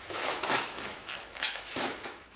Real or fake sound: fake